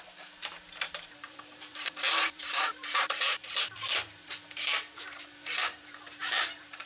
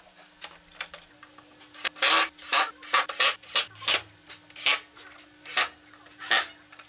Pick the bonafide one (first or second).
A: second